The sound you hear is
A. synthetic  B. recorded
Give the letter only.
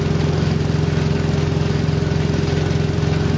B